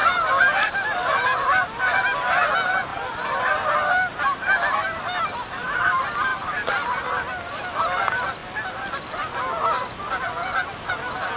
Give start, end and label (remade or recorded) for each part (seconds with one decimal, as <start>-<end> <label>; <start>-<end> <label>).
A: 0.0-1.8 remade; 1.8-2.9 recorded; 2.9-5.2 remade; 5.2-6.3 recorded; 6.3-7.0 remade; 7.0-11.4 recorded